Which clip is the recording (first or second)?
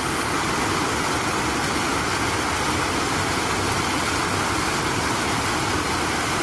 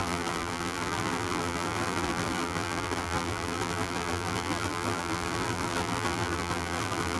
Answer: first